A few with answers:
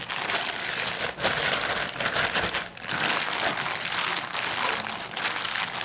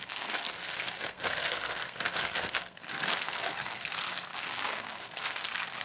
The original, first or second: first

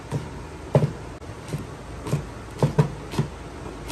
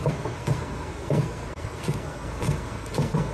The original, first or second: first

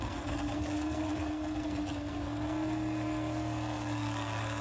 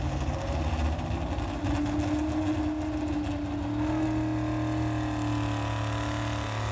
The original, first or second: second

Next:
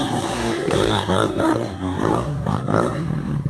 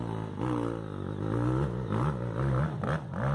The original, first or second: second